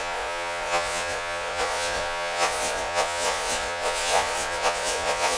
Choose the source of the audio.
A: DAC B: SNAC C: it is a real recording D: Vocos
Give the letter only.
D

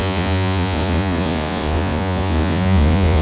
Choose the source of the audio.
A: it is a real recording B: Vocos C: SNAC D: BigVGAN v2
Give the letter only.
B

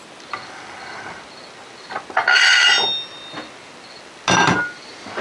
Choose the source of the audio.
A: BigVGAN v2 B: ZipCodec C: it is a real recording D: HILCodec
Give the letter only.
C